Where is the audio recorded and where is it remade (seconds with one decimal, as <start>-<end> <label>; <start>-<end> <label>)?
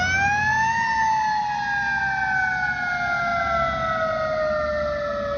0.0-5.4 recorded